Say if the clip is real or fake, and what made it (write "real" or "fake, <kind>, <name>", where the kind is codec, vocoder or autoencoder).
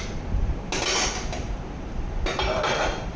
real